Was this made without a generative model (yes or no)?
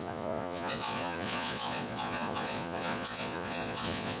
no